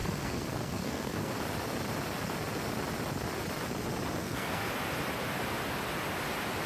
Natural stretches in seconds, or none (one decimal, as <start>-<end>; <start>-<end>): 1.4-4.2; 4.7-6.7